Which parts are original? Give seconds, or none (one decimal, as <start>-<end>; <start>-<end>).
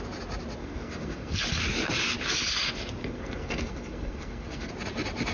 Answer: 0.0-0.6; 1.4-3.0; 4.7-5.3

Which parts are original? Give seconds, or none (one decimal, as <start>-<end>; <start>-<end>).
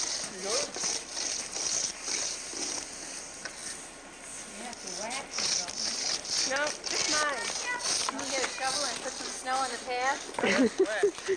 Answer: 0.0-0.4; 1.9-11.4